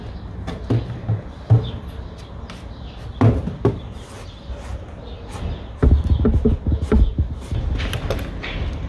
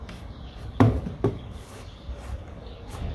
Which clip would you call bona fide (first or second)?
first